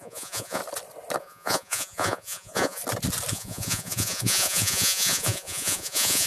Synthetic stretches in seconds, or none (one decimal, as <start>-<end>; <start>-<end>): 0.0-0.6; 1.2-2.8; 3.3-6.3

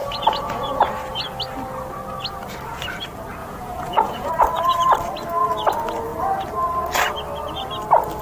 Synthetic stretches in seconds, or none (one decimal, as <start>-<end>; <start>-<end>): 0.0-0.9; 3.4-4.3

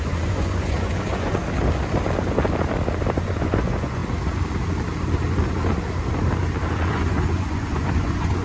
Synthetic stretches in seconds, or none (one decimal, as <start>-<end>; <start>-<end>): 0.0-1.4; 3.2-4.0; 6.7-8.4

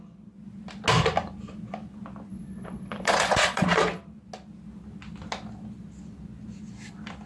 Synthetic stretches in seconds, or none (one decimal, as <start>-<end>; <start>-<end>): 2.3-4.0

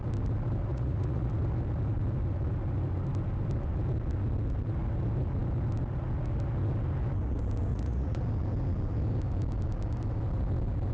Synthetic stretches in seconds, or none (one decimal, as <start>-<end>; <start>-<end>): 0.7-1.3; 7.7-8.2

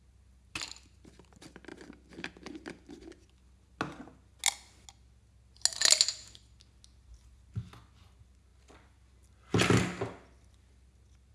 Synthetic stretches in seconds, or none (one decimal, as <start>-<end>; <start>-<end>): none